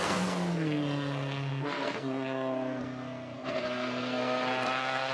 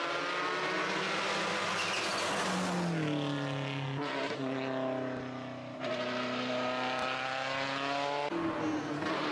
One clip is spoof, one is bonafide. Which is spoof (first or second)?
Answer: first